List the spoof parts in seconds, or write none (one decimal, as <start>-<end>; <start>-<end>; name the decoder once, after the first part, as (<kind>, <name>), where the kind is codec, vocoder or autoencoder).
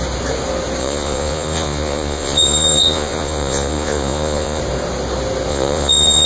0.8-4.6 (vocoder, Vocos); 5.5-6.3